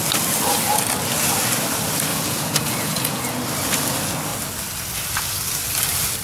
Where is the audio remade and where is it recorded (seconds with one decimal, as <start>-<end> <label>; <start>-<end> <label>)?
0.0-2.1 recorded; 2.1-3.3 remade; 3.3-6.2 recorded